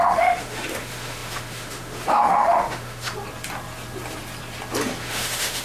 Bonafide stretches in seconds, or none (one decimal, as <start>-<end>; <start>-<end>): 3.1-5.0